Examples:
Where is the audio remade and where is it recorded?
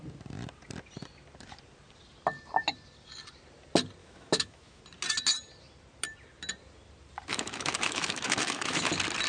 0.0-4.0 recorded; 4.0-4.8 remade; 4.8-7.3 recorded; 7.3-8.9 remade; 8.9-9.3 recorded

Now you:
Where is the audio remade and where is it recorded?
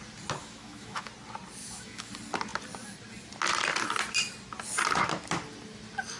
0.0-0.4 recorded; 0.4-1.1 remade; 1.1-1.6 recorded; 1.6-2.1 remade; 2.1-6.2 recorded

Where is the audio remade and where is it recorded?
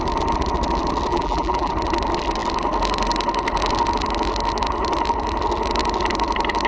0.0-1.1 recorded; 1.1-1.7 remade; 1.7-6.7 recorded